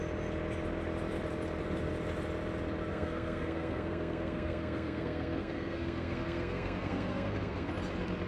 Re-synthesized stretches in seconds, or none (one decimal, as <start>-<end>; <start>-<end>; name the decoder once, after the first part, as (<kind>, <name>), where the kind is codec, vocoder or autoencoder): 2.9-7.7 (codec, SNAC)